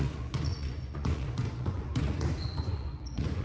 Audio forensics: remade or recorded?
remade